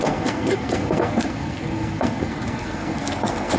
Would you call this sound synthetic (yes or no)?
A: yes